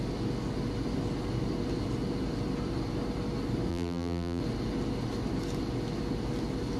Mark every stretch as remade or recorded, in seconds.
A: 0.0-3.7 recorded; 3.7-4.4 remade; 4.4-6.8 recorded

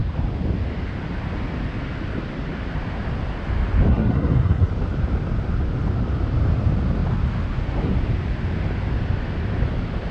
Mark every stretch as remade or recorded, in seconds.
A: 0.0-3.9 recorded; 3.9-4.7 remade; 4.7-10.1 recorded

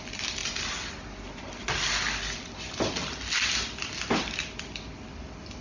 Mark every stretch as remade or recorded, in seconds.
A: 0.0-5.6 recorded

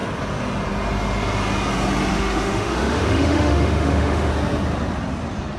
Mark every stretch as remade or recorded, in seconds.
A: 0.0-2.1 recorded; 2.1-4.3 remade; 4.3-5.6 recorded

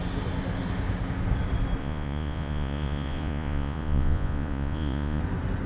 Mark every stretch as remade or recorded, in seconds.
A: 0.0-1.8 recorded; 1.8-5.2 remade; 5.2-5.7 recorded